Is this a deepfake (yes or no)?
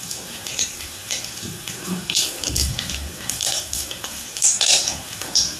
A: yes